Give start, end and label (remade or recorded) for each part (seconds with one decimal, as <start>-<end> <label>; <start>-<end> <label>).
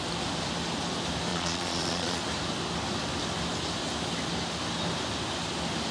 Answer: 0.0-1.3 recorded; 1.3-2.2 remade; 2.2-5.9 recorded